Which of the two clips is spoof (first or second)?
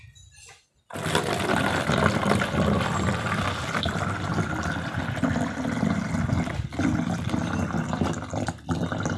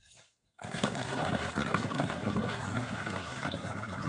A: second